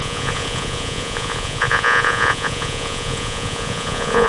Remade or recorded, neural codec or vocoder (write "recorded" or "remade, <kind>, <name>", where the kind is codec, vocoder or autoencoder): remade, vocoder, Vocos